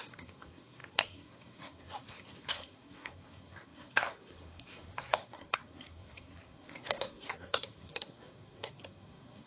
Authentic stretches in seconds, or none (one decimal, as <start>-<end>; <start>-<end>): none